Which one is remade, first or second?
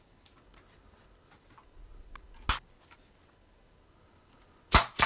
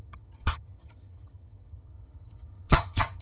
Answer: second